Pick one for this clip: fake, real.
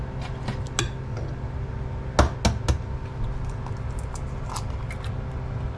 real